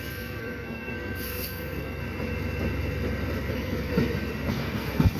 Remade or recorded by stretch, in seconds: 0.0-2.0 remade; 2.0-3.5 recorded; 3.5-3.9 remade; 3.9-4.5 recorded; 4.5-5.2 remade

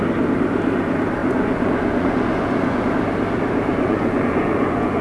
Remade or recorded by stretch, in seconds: 0.0-1.2 recorded; 1.2-2.9 remade; 2.9-3.7 recorded; 3.7-5.0 remade

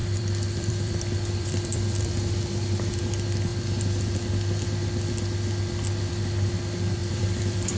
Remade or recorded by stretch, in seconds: 0.0-2.3 remade; 2.3-7.0 recorded; 7.0-7.8 remade

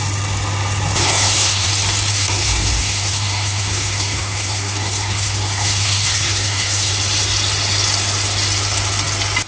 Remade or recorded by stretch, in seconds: 0.0-1.0 recorded; 1.0-1.7 remade; 1.7-2.1 recorded; 2.1-6.9 remade; 6.9-9.5 recorded

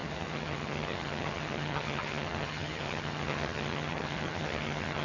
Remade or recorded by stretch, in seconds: 0.0-5.0 remade

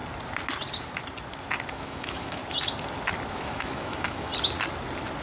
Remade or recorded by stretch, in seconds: 0.0-1.7 recorded; 1.7-2.4 remade; 2.4-3.3 recorded; 3.3-4.3 remade; 4.3-5.2 recorded

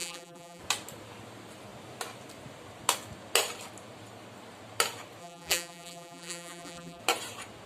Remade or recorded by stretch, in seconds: 0.0-0.6 remade; 0.6-5.2 recorded; 5.2-7.0 remade; 7.0-7.7 recorded